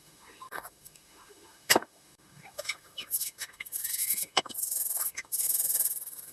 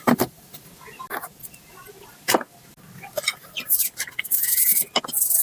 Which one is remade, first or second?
first